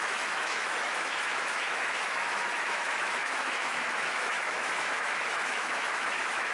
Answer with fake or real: fake